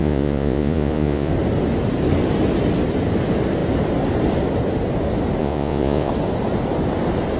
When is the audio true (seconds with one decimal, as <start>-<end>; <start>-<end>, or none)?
1.3-5.4; 6.1-7.4